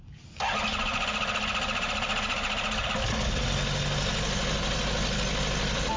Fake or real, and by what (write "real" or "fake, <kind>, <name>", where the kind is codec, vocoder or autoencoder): real